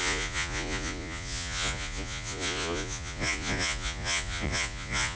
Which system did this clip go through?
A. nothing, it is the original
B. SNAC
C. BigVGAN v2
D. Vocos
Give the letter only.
D